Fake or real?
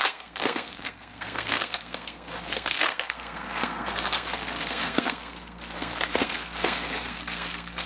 fake